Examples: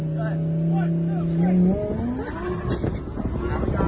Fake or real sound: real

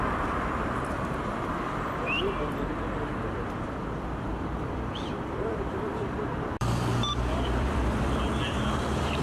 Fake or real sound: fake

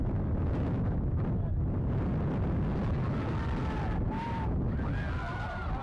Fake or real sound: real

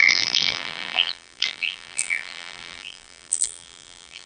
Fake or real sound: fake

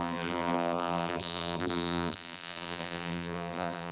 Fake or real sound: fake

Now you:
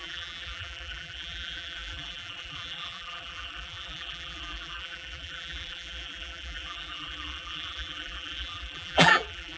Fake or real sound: fake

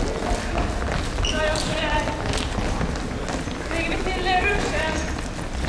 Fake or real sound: real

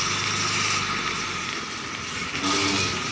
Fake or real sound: real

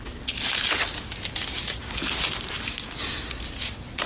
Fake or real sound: real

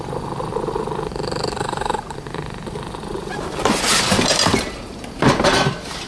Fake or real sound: fake